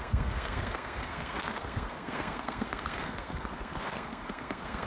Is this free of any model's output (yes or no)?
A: no